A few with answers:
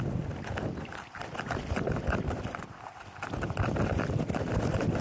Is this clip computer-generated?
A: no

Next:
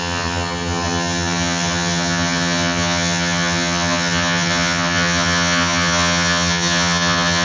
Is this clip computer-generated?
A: yes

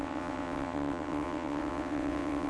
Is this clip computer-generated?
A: yes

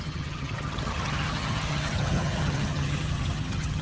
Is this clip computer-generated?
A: yes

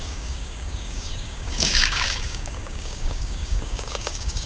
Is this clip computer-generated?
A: yes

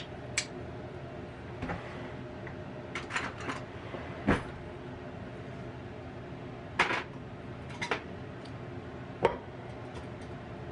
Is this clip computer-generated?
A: no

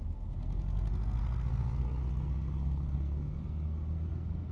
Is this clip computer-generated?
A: yes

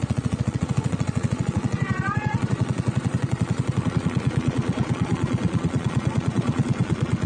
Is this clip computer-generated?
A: yes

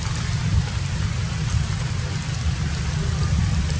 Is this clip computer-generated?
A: no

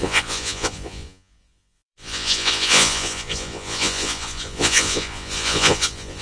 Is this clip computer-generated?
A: yes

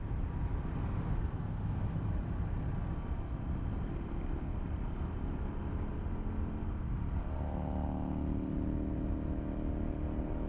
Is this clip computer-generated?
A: no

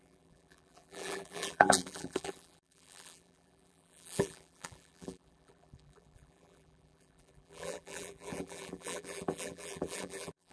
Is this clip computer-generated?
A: yes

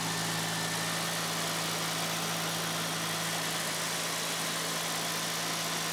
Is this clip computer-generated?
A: no